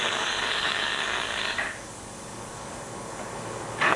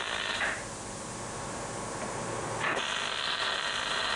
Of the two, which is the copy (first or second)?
first